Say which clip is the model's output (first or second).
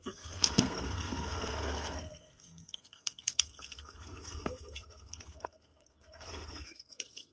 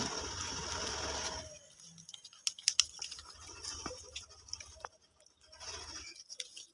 first